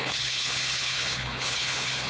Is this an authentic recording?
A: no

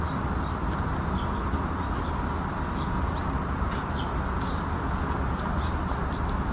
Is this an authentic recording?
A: yes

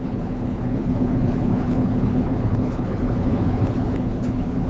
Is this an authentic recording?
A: no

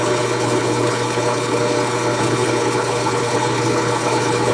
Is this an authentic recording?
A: no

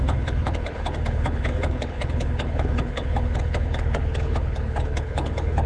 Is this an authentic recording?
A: no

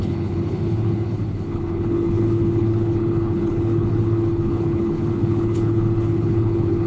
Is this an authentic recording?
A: no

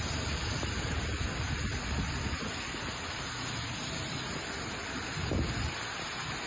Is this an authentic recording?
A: yes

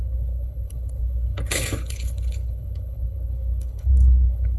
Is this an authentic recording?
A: no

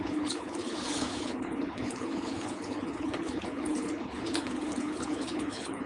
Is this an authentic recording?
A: no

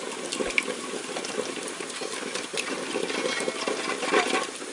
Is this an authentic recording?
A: yes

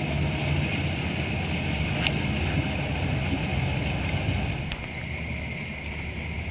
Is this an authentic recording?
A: yes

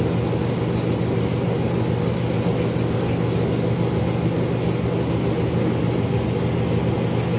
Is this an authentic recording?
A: yes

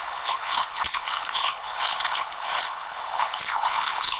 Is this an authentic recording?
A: no